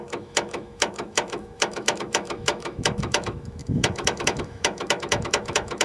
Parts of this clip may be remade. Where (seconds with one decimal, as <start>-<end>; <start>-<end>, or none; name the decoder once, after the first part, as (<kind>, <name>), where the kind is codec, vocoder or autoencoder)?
0.0-5.8 (autoencoder, DAC-VAE)